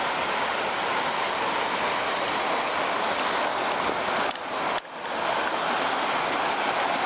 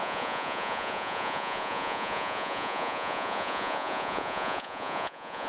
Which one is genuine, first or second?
first